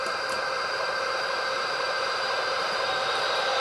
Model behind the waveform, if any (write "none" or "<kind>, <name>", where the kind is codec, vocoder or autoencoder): vocoder, BigVGAN v2